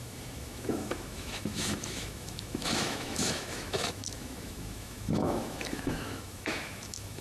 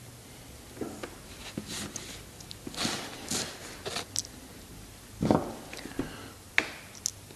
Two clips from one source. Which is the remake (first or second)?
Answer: first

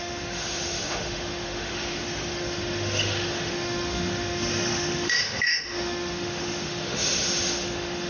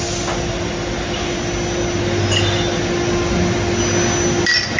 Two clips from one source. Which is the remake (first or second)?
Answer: first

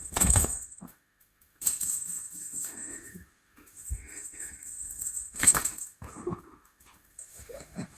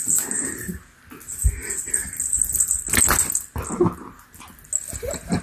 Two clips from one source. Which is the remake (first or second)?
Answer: first